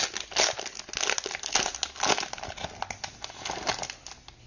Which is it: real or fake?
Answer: real